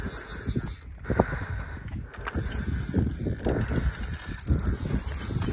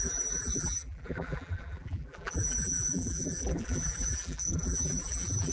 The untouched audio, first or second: first